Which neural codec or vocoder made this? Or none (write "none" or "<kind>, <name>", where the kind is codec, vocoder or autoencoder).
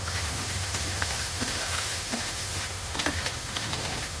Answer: autoencoder, DAC-VAE